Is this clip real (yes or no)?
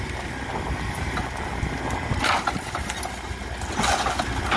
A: yes